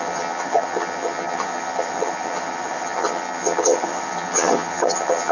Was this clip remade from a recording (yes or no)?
yes